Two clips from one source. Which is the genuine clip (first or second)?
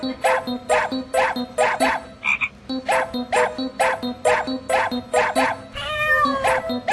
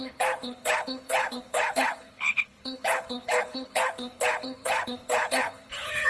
first